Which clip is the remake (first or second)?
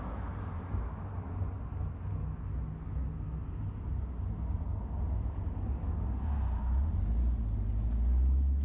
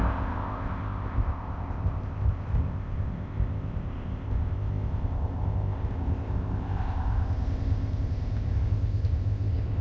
second